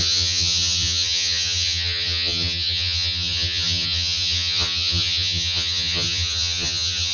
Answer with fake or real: fake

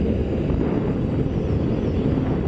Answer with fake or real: real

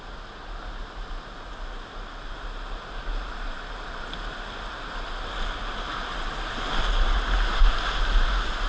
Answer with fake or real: real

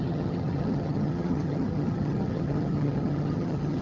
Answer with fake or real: fake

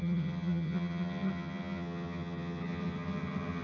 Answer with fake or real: fake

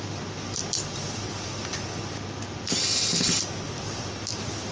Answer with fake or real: real